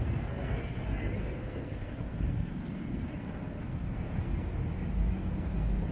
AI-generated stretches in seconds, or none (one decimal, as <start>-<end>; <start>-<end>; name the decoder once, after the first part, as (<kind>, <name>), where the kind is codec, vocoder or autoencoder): 0.0-4.5 (codec, SNAC); 5.1-5.9